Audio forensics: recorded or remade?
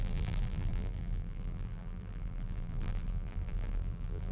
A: remade